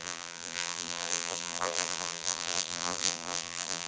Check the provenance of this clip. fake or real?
fake